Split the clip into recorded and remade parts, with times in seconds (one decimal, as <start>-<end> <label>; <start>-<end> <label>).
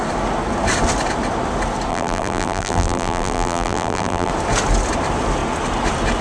0.0-1.9 recorded; 1.9-4.3 remade; 4.3-6.2 recorded